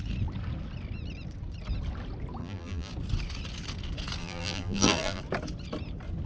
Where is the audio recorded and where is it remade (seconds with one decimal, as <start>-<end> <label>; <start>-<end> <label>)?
0.0-2.4 recorded; 2.4-2.9 remade; 2.9-4.2 recorded; 4.2-5.2 remade; 5.2-6.3 recorded